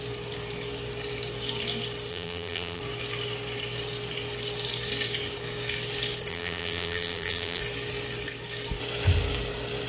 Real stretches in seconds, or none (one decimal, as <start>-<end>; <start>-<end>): 0.0-2.1; 2.8-6.3; 7.6-9.9